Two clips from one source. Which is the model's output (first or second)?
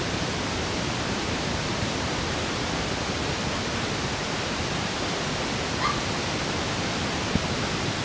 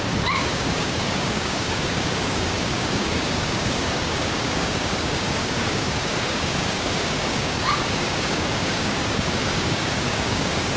second